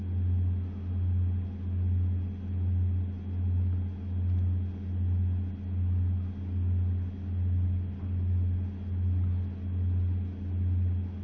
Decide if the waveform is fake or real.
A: real